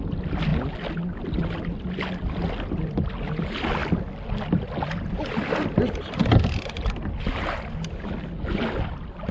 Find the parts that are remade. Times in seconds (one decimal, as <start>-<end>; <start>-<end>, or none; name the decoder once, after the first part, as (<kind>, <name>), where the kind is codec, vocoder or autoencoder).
none